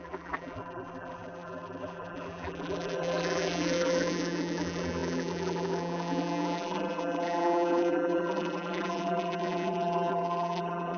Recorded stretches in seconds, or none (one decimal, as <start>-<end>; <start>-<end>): none